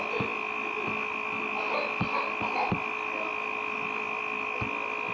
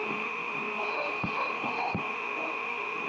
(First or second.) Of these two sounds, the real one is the first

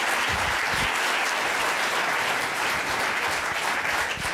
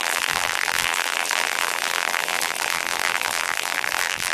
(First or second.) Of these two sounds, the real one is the first